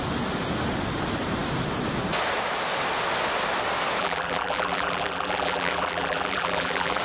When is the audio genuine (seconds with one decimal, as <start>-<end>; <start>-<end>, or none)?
0.0-4.0